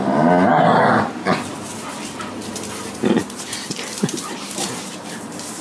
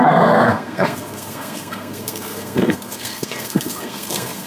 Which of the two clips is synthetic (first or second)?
second